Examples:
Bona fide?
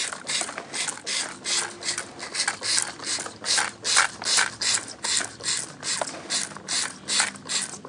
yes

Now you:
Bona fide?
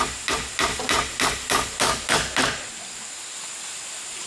yes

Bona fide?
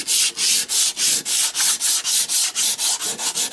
yes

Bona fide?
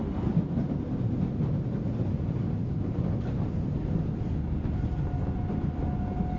yes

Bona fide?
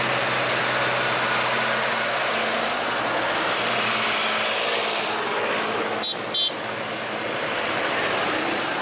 yes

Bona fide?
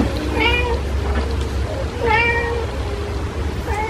yes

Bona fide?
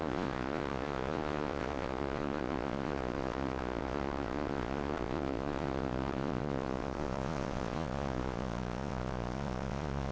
no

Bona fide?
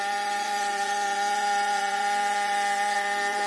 no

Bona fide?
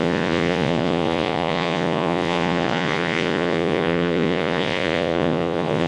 no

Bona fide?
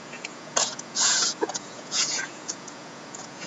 no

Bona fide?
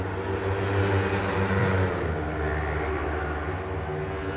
yes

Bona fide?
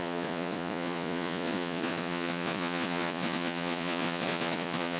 no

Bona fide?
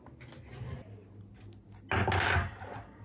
yes